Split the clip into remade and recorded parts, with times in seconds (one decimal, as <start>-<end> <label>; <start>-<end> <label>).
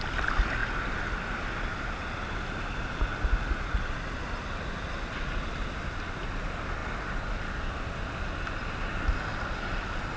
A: 0.0-10.2 recorded